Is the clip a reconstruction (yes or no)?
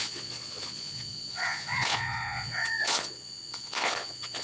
yes